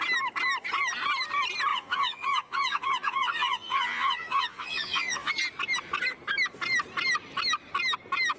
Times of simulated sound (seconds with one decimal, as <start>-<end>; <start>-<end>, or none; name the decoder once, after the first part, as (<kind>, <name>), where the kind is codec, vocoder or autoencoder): 1.7-5.3 (vocoder, Vocos)